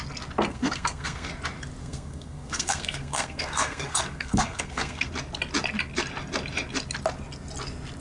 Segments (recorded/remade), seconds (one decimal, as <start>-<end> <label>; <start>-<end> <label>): 0.0-0.5 recorded; 0.5-1.3 remade; 1.3-1.8 recorded; 1.8-5.1 remade; 5.1-8.0 recorded